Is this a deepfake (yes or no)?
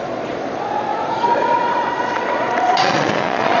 yes